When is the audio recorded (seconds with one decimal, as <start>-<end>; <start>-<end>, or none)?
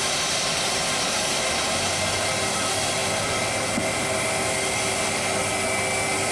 1.5-6.3